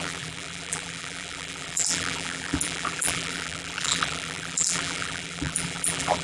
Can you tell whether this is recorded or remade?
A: remade